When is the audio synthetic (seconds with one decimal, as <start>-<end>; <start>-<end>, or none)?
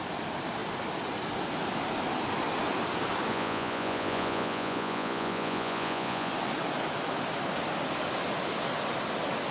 3.3-6.3